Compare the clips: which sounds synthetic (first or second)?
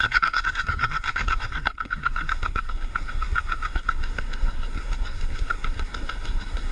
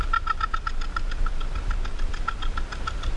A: first